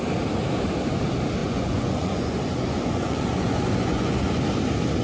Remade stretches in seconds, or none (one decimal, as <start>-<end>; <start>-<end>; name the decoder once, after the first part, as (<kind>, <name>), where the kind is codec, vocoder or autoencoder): 1.4-4.4 (vocoder, Vocos)